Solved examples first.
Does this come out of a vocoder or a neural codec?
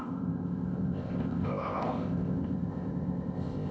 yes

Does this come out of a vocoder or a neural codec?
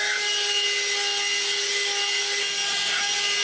no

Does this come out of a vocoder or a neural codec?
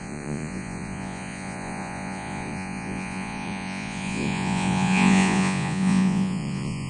yes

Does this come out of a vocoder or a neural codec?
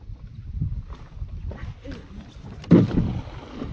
no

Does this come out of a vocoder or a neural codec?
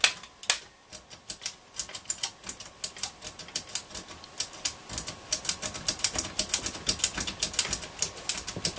no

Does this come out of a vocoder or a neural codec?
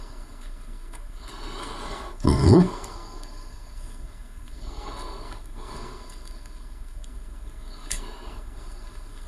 yes